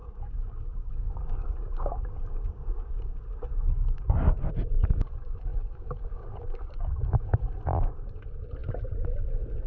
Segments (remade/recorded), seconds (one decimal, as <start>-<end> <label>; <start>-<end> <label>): 0.0-4.5 remade; 4.5-5.5 recorded; 5.5-7.4 remade; 7.4-9.7 recorded